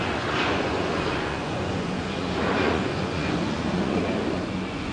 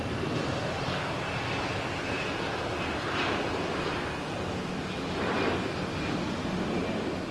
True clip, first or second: second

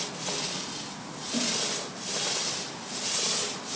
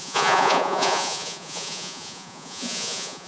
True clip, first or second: first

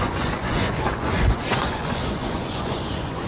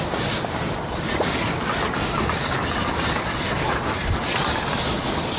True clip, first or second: second